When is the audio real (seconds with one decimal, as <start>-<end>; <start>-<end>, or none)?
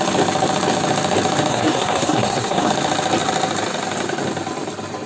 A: 0.0-1.5; 2.7-5.1